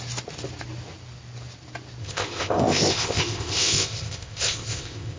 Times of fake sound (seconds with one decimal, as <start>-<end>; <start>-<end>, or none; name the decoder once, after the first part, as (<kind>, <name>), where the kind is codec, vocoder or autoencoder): 2.0-5.2 (codec, ZipCodec)